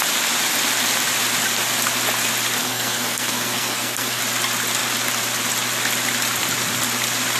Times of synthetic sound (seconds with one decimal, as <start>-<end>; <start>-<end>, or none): 2.6-4.2